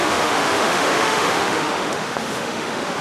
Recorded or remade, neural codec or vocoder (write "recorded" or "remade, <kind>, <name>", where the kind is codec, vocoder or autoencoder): remade, autoencoder, DAC-VAE